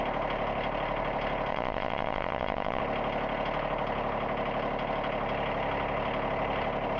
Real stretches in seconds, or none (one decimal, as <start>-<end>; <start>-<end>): 0.0-1.5; 2.8-7.0